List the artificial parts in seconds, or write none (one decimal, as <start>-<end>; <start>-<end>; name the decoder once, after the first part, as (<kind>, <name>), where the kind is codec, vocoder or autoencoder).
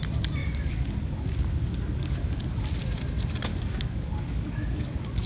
0.4-2.4 (codec, DAC); 3.5-5.3